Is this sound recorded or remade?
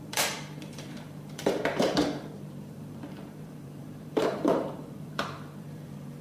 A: remade